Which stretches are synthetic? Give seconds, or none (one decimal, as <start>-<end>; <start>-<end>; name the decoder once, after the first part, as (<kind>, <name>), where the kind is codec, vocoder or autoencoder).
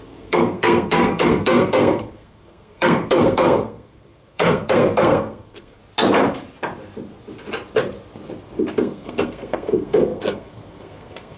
0.0-5.8 (codec, SNAC); 8.7-11.4